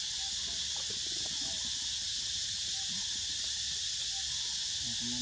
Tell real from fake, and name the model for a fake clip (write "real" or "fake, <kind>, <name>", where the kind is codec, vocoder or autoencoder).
real